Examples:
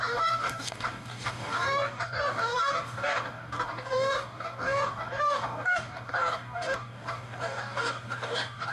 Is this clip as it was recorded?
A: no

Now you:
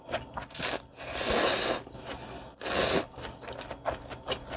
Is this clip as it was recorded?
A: yes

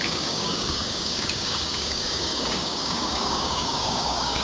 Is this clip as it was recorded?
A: no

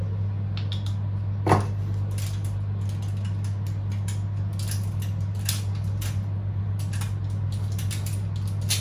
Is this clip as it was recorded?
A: yes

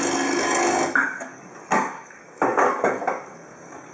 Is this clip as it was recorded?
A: no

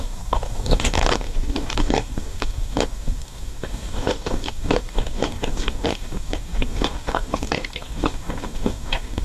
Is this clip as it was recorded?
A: no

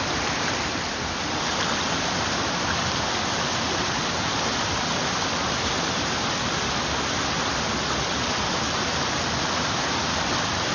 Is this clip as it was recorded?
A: yes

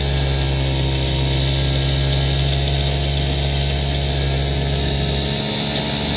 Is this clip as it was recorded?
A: yes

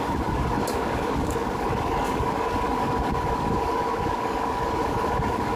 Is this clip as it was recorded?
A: no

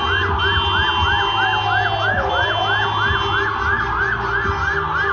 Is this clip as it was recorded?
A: yes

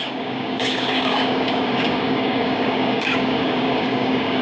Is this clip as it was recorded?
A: no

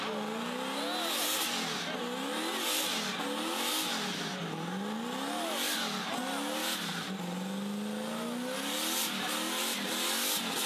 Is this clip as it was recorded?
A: yes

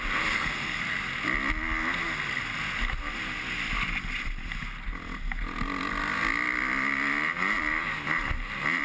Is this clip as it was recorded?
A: yes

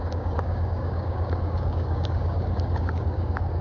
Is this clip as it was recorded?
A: no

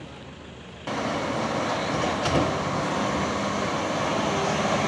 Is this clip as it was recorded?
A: yes